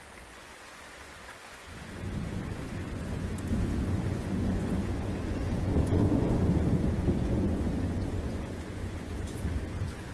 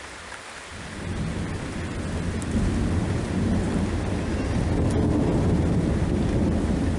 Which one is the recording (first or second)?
second